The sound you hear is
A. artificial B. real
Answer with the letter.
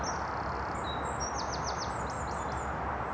B